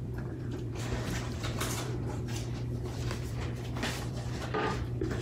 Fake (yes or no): yes